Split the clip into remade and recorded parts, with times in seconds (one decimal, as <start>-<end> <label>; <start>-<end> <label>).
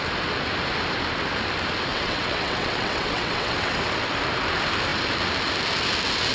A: 0.0-1.9 recorded; 1.9-3.8 remade; 3.8-6.3 recorded